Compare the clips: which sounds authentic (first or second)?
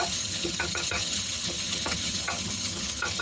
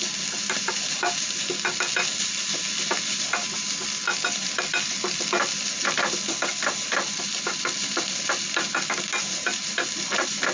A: second